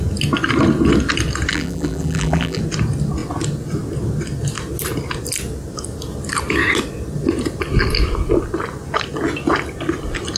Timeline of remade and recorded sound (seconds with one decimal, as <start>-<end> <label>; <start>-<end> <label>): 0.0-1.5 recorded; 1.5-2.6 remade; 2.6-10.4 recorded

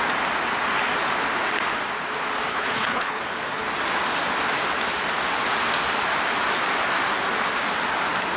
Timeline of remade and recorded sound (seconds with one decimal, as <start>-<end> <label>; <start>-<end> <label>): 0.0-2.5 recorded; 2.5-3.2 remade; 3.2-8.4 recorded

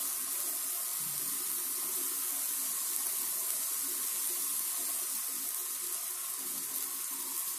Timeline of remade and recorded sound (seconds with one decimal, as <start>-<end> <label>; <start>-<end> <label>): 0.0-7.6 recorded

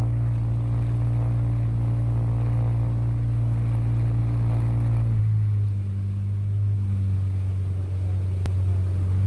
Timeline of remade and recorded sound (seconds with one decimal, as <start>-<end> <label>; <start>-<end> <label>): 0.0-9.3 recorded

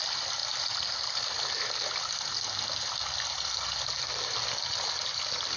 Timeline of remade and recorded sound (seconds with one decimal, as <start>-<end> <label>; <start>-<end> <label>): 0.0-5.6 recorded